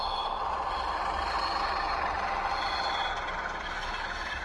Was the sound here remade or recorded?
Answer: recorded